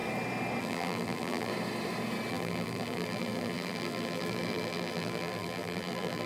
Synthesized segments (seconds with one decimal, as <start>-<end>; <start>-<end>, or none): 0.6-1.5; 2.3-6.3